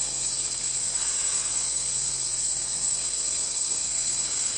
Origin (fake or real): fake